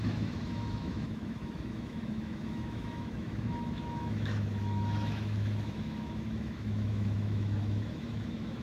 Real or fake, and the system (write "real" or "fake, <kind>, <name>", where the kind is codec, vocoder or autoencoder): fake, autoencoder, DAC-VAE